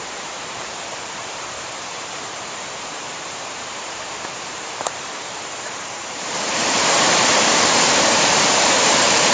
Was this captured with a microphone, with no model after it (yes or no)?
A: no